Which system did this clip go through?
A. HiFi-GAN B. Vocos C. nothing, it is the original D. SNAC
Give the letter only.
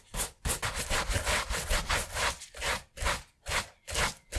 C